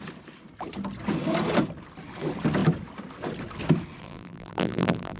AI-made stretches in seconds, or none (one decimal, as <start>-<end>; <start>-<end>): 4.0-5.2